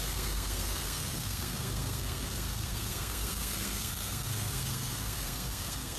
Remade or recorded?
remade